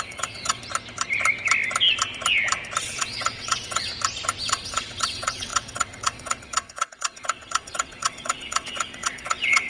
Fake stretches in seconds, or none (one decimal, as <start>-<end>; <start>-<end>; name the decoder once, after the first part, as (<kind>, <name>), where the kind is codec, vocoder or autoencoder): 0.0-0.6 (vocoder, WaveNeXt); 2.8-3.9; 4.4-9.7